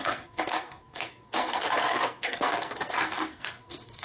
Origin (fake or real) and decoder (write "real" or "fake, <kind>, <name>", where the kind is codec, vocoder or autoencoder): fake, codec, SNAC